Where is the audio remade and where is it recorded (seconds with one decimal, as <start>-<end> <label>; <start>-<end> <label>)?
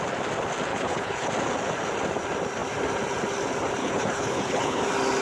0.0-0.7 recorded; 0.7-1.3 remade; 1.3-3.8 recorded; 3.8-4.8 remade; 4.8-5.2 recorded